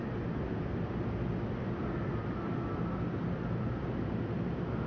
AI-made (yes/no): no